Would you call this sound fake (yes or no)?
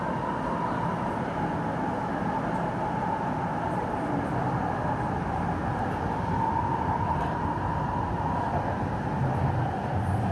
no